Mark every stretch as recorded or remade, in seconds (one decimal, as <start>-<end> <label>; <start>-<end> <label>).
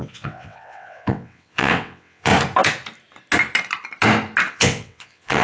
0.0-2.3 remade; 2.3-4.5 recorded; 4.5-5.4 remade